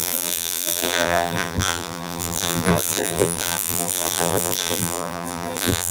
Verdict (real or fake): fake